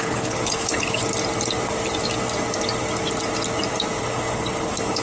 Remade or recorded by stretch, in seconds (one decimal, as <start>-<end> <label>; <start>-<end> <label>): 0.0-1.0 remade; 1.0-4.0 recorded; 4.0-5.0 remade